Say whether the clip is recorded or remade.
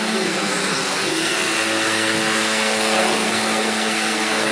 remade